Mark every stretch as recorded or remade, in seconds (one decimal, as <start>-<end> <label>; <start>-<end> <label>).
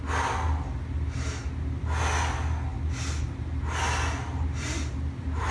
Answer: 0.0-5.5 recorded